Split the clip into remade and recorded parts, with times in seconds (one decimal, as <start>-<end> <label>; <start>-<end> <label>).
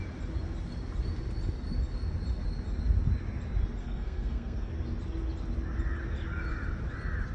0.0-3.8 recorded; 3.8-4.7 remade; 4.7-7.3 recorded